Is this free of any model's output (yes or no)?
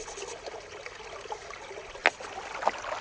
yes